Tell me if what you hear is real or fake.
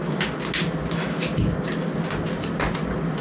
real